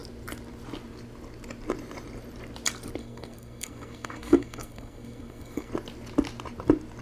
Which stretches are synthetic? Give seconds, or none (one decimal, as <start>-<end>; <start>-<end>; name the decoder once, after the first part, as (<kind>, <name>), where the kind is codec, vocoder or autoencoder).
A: 3.0-5.7 (codec, SNAC)